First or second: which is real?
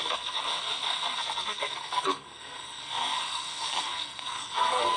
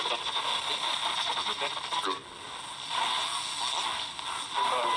second